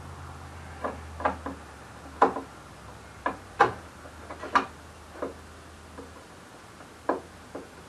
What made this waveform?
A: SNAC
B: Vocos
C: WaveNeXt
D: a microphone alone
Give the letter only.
D